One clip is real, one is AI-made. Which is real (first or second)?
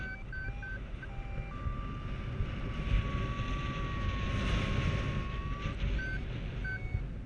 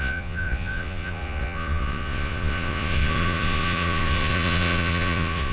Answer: first